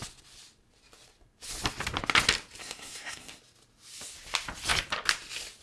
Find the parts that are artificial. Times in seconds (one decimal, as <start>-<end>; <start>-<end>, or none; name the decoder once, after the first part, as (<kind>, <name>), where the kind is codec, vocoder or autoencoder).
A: 2.6-3.4 (codec, SNAC)